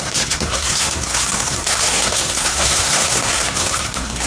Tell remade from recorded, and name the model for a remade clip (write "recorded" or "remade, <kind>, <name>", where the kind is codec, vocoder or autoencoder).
remade, codec, SNAC